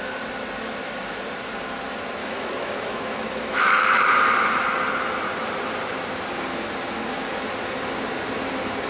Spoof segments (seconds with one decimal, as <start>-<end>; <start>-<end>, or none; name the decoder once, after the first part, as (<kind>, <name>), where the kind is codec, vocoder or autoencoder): 2.2-4.1 (autoencoder, DAC-VAE)